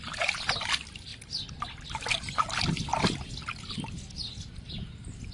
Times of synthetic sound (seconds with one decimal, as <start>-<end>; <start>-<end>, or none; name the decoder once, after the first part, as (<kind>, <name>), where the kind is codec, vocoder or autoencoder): none